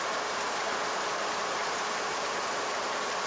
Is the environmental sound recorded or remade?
remade